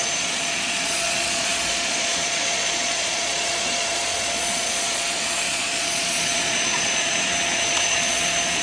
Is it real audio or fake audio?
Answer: fake